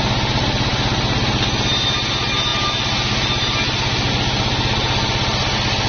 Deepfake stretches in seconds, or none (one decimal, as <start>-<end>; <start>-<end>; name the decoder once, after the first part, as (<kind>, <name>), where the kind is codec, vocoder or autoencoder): none